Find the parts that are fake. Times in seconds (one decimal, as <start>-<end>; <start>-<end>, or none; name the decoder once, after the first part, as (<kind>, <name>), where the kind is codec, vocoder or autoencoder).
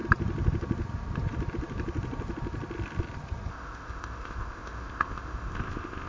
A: 3.5-6.1 (codec, ZipCodec)